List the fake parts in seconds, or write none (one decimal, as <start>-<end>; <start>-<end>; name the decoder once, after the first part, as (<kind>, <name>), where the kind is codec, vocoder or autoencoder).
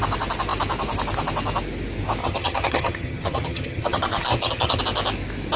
2.2-4.8 (vocoder, HiFi-GAN)